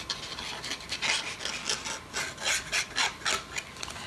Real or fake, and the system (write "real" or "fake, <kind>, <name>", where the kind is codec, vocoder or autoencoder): real